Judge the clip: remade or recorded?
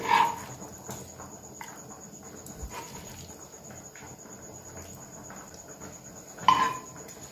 recorded